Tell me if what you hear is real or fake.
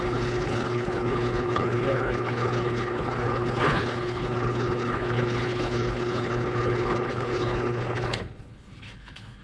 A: fake